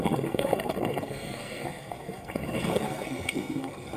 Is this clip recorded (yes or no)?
no